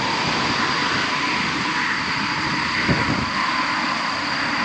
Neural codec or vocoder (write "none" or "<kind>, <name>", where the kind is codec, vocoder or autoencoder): none